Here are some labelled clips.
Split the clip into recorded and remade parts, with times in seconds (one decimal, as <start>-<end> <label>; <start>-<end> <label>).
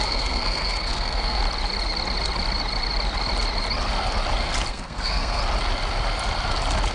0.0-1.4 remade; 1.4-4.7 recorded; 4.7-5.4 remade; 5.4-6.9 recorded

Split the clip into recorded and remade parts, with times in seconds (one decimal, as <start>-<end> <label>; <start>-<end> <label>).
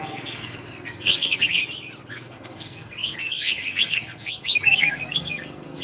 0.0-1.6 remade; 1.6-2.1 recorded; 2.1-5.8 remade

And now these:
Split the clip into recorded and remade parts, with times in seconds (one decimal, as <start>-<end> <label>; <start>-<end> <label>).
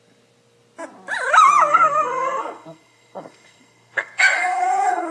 0.0-1.7 recorded; 1.7-5.1 remade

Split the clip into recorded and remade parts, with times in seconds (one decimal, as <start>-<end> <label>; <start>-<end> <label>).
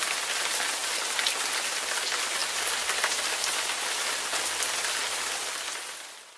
0.0-6.4 recorded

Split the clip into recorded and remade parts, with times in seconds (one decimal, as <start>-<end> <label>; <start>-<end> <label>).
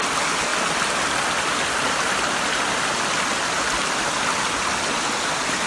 0.0-5.7 recorded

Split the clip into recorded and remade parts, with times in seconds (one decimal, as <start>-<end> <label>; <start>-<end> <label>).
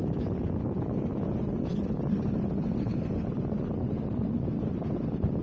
0.0-5.4 recorded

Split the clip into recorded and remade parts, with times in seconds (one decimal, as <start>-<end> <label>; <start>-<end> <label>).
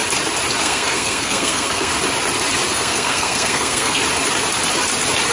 0.0-0.6 recorded; 0.6-1.9 remade; 1.9-2.7 recorded; 2.7-4.0 remade; 4.0-5.3 recorded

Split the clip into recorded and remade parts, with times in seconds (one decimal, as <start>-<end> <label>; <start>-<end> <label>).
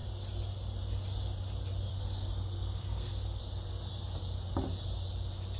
0.0-1.9 recorded; 1.9-3.4 remade; 3.4-5.6 recorded